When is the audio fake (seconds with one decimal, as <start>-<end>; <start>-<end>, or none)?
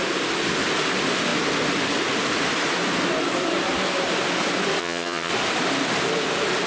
4.8-5.3